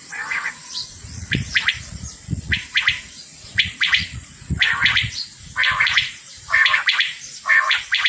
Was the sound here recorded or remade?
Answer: remade